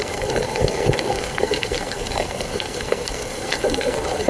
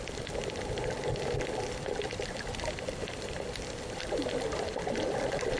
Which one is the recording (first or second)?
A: second